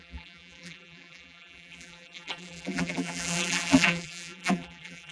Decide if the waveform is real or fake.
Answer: fake